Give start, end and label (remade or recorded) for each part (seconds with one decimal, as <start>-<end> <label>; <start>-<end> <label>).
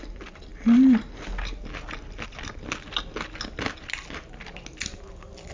0.0-5.5 recorded